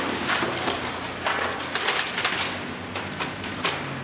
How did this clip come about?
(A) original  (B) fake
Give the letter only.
A